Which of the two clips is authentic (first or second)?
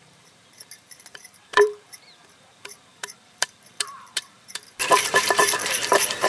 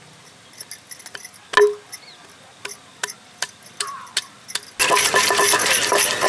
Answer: second